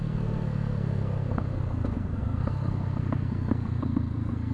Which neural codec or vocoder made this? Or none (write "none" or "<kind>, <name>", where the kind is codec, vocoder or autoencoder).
codec, SNAC